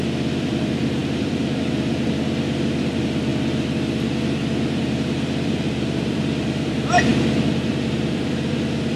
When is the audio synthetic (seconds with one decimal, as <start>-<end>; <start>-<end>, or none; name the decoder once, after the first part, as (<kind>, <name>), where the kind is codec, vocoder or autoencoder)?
0.0-3.3 (vocoder, BigVGAN v2); 4.4-7.1; 7.7-9.0